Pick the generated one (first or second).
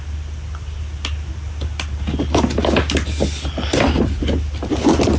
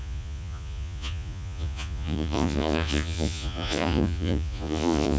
second